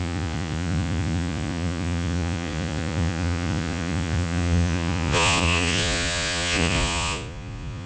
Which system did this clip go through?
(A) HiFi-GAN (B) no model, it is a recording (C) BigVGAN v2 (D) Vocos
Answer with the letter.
D